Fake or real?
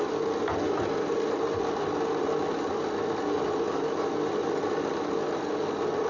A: real